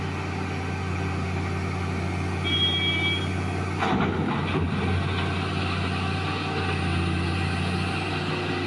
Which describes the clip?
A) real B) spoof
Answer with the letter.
A